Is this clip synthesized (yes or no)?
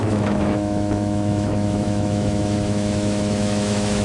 yes